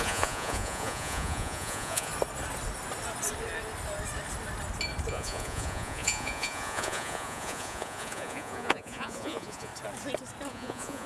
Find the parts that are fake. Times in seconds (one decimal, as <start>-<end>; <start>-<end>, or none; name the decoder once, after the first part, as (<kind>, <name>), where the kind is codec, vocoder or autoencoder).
0.0-2.1 (vocoder, Vocos); 5.1-9.7; 10.5-11.1